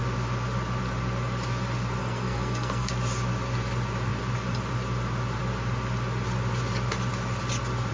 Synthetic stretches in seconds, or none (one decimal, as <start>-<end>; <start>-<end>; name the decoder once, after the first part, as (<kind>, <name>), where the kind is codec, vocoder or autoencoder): 2.0-2.9 (codec, SNAC)